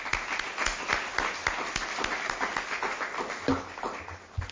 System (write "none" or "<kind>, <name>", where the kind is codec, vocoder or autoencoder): none